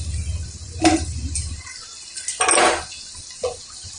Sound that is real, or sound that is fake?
real